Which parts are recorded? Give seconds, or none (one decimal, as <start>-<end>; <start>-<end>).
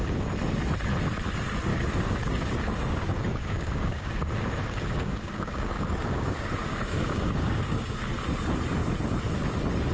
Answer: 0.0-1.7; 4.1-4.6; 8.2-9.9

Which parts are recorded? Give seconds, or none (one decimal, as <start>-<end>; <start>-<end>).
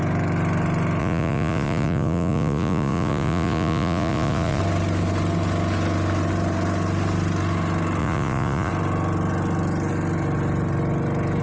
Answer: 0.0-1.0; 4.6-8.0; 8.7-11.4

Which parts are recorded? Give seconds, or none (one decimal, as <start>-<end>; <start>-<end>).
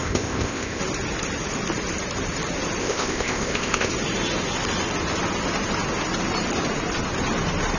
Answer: 0.8-2.8; 3.9-7.8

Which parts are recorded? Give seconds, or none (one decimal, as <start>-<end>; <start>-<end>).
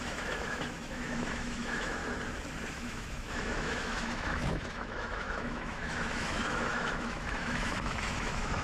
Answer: 2.0-2.7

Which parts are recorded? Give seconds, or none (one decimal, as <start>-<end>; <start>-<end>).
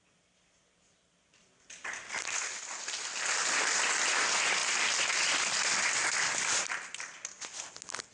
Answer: 0.0-8.1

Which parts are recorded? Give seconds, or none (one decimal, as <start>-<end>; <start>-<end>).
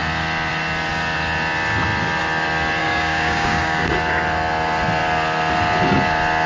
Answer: 0.0-2.8; 3.9-6.5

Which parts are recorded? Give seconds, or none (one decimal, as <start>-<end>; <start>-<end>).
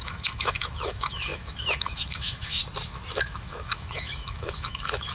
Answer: 2.6-3.1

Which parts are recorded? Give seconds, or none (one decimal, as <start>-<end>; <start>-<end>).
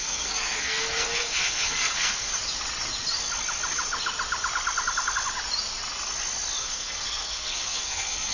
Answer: 2.3-6.6